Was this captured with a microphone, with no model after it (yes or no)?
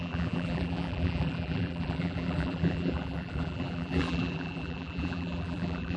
no